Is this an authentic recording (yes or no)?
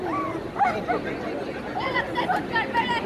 no